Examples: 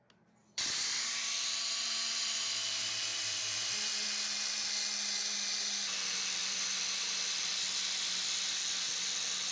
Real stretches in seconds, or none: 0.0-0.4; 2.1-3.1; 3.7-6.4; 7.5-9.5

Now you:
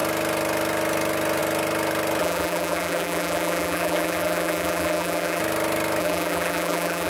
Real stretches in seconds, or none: 0.0-2.2; 5.4-6.0

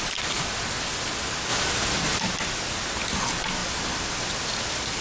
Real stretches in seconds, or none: 0.0-3.6

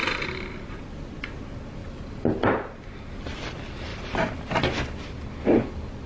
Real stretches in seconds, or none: 0.8-1.8; 3.2-3.9; 5.1-6.1

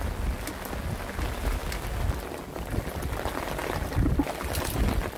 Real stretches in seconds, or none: 0.0-5.2

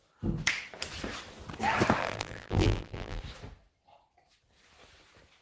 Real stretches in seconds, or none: 0.0-2.0; 3.2-5.4